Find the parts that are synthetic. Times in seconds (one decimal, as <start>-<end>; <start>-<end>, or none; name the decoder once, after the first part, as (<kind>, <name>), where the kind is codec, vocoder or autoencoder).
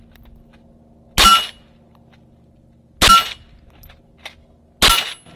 none